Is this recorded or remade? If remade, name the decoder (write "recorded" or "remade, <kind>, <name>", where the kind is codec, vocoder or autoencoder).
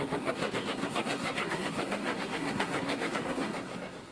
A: remade, codec, SNAC